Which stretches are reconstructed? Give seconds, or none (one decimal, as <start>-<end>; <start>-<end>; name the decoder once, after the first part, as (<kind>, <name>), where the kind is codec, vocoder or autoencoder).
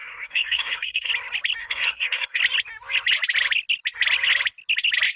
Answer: 0.0-1.1 (codec, SNAC); 1.6-2.4